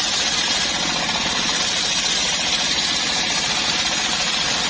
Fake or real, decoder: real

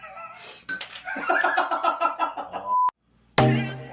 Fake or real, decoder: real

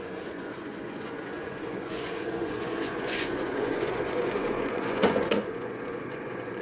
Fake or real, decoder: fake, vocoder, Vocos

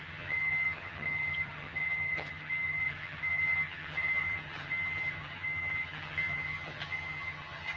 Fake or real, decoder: fake, vocoder, HiFi-GAN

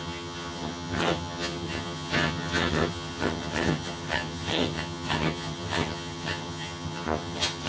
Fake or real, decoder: fake, vocoder, HiFi-GAN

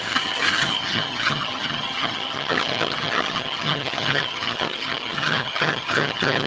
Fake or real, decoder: fake, vocoder, HiFi-GAN